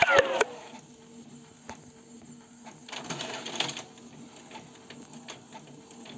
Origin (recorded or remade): recorded